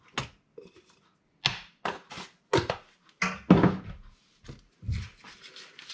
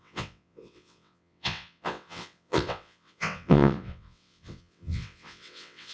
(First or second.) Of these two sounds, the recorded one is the first